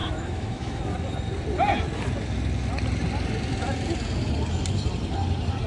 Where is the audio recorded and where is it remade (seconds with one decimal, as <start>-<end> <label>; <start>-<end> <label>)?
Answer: 0.0-0.8 remade; 0.8-5.7 recorded